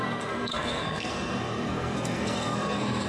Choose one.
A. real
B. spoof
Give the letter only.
B